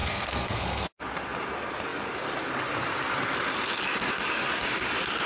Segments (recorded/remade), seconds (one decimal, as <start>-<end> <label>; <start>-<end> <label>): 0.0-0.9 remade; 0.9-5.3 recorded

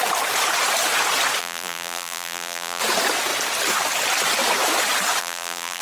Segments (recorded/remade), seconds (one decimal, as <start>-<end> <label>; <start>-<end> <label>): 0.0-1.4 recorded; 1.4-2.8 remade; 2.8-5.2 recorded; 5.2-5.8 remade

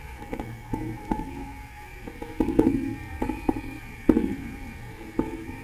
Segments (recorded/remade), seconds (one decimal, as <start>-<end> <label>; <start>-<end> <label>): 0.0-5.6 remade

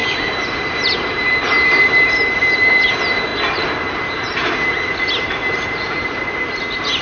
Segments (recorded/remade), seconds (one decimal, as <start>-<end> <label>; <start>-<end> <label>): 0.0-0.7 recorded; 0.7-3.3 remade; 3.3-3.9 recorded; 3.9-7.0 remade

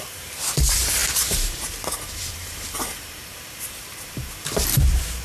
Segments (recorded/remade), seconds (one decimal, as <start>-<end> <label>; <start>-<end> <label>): 0.0-5.2 remade